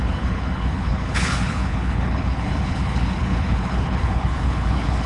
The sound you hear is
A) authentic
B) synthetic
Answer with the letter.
B